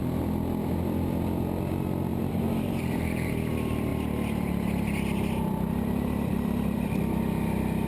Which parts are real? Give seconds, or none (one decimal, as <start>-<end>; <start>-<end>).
0.0-2.1; 3.3-7.9